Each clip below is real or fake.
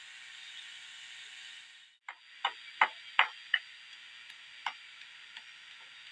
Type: real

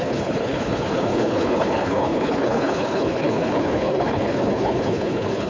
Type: fake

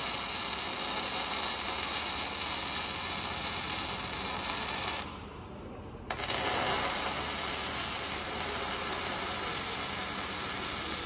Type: real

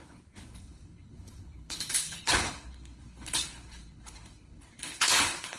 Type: fake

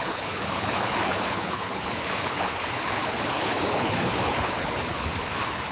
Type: fake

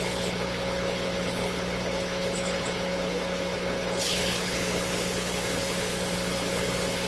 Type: fake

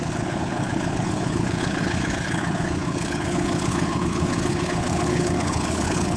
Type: fake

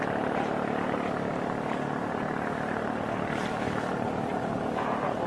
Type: real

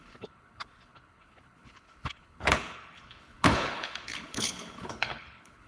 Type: fake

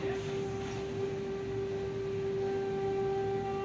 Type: real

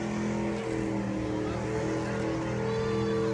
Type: real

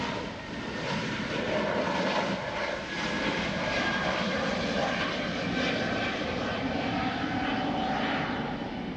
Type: real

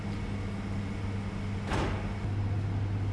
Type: real